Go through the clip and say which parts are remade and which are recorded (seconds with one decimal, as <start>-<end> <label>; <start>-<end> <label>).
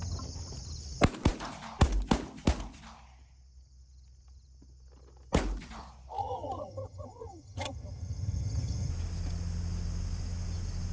0.0-6.2 recorded; 6.2-8.9 remade; 8.9-10.9 recorded